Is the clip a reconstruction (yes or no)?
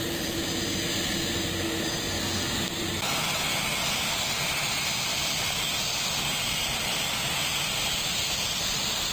no